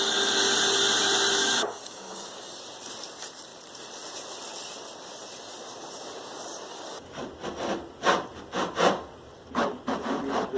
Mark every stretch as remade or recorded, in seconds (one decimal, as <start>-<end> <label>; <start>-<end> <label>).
0.0-1.4 recorded; 1.4-2.5 remade; 2.5-6.7 recorded; 6.7-7.2 remade; 7.2-10.6 recorded